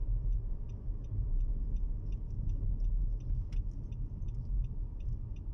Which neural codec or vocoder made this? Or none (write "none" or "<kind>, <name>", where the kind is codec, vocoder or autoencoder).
none